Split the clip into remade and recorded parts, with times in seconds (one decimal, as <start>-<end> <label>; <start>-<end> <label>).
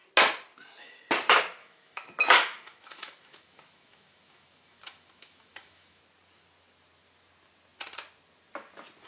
0.0-1.6 recorded; 1.6-6.0 remade; 6.0-9.1 recorded